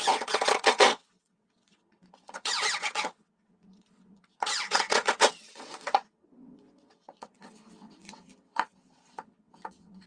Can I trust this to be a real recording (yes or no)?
no